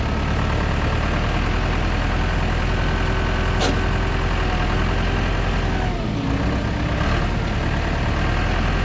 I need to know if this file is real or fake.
real